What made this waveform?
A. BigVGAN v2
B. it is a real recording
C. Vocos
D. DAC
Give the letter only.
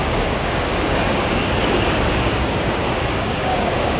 D